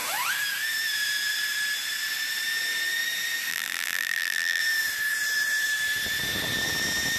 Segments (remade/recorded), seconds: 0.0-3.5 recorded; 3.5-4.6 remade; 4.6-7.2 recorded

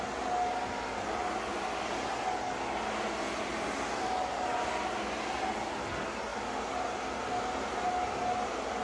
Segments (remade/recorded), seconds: 0.0-8.8 recorded

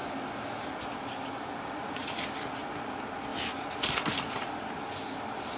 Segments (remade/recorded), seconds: 0.0-1.5 recorded; 1.5-2.2 remade; 2.2-5.6 recorded

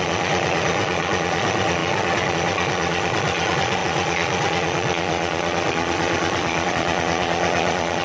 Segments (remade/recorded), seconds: 0.0-8.0 remade

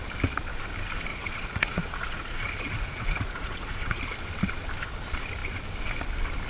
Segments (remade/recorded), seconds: 0.0-1.1 recorded; 1.1-4.0 remade; 4.0-6.5 recorded